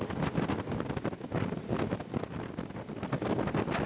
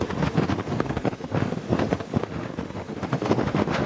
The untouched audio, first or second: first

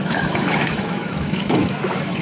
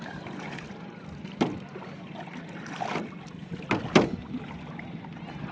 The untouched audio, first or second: second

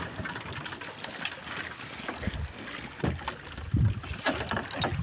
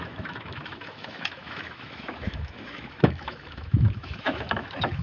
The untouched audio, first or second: first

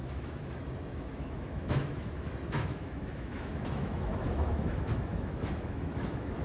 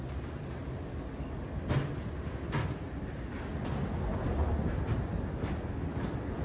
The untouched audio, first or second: second